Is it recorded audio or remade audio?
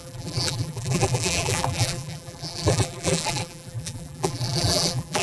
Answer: remade